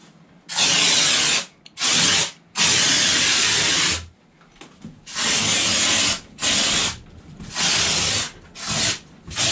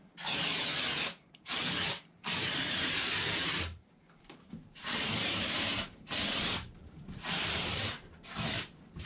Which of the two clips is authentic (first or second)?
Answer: first